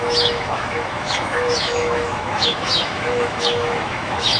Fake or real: fake